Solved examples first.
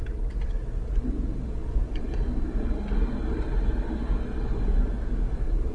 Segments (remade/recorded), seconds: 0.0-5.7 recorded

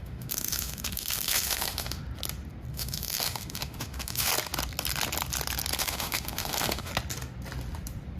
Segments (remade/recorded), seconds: 0.0-2.0 remade; 2.0-2.7 recorded; 2.7-4.3 remade; 4.3-5.8 recorded; 5.8-6.9 remade; 6.9-8.2 recorded

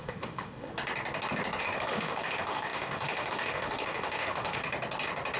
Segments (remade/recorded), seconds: 0.0-0.7 remade; 0.7-1.6 recorded; 1.6-4.6 remade; 4.6-5.4 recorded

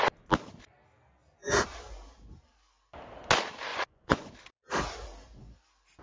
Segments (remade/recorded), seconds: 0.0-3.7 recorded; 3.7-4.3 remade; 4.3-6.0 recorded